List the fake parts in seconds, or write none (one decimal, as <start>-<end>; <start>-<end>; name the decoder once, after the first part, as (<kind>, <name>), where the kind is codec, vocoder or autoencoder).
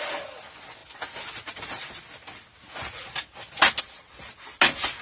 none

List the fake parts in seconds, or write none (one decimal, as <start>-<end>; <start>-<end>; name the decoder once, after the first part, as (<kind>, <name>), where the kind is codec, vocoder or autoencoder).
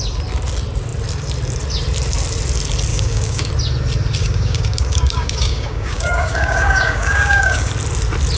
2.9-3.5 (codec, DAC); 4.2-7.7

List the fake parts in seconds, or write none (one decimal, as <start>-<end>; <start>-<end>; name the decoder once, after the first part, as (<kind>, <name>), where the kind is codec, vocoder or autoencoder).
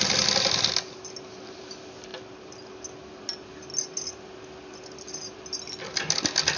none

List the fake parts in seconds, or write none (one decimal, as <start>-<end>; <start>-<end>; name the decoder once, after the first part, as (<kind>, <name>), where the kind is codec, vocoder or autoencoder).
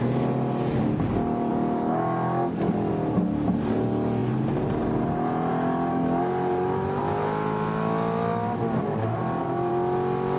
1.5-2.9 (codec, DAC); 5.9-7.0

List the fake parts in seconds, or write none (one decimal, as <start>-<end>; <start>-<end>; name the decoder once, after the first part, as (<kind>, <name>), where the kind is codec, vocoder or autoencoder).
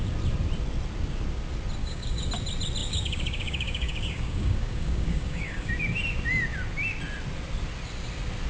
1.8-2.3 (codec, DAC); 2.8-5.7